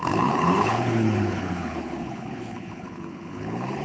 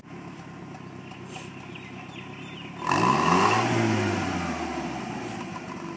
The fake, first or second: first